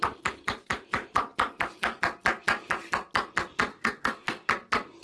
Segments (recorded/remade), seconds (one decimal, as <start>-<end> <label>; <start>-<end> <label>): 0.0-3.7 recorded; 3.7-4.5 remade; 4.5-5.0 recorded